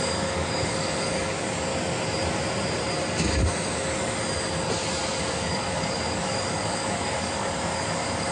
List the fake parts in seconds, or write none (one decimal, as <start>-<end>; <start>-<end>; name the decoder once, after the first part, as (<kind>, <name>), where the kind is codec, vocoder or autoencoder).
0.0-1.7 (codec, DAC); 5.4-8.3